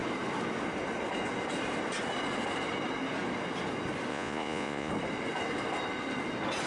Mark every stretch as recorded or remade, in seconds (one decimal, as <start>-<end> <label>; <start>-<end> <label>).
0.0-4.1 recorded; 4.1-4.9 remade; 4.9-6.7 recorded